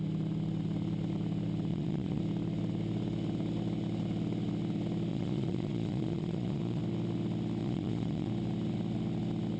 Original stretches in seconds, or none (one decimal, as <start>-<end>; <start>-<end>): 0.0-1.7; 2.2-5.1; 6.8-7.6; 8.3-9.6